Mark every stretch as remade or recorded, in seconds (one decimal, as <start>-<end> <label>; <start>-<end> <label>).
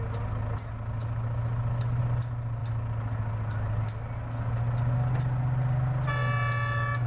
0.0-7.1 recorded